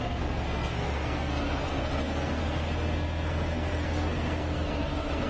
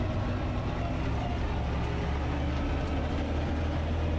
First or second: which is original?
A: second